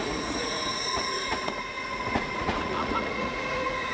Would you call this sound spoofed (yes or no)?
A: yes